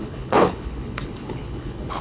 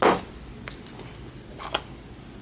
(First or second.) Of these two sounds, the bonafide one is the second